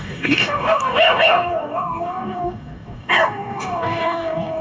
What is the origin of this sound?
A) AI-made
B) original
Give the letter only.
A